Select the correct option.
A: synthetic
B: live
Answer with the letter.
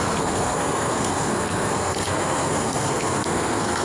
A